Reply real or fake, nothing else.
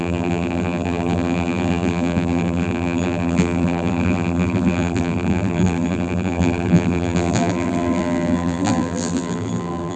fake